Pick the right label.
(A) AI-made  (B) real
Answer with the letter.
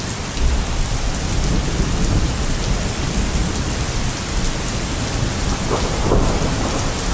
B